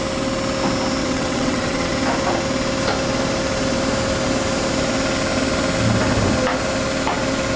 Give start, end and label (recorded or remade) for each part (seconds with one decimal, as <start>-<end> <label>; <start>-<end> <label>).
0.0-1.0 recorded; 1.0-1.9 remade; 1.9-7.6 recorded